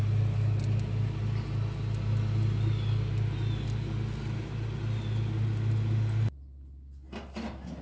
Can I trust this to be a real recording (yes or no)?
yes